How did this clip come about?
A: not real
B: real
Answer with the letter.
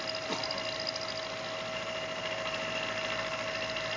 B